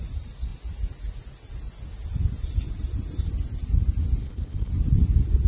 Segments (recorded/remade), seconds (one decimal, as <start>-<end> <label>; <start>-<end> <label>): 0.0-4.2 recorded; 4.2-4.7 remade; 4.7-5.5 recorded